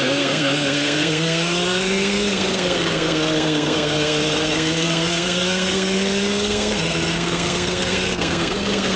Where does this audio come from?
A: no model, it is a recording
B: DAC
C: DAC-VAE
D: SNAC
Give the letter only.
D